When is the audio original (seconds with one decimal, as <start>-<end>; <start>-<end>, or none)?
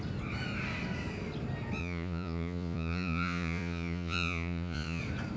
0.0-1.8; 5.0-5.4